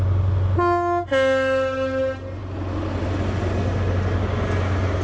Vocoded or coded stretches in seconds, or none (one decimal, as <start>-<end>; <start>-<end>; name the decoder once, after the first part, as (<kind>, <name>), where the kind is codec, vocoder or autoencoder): none